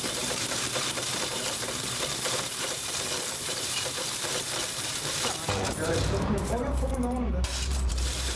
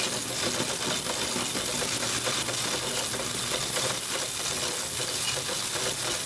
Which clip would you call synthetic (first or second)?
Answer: first